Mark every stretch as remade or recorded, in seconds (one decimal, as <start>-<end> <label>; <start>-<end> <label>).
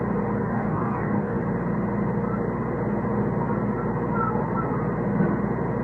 0.0-0.4 recorded; 0.4-1.4 remade; 1.4-5.8 recorded